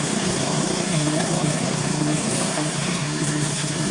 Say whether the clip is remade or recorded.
remade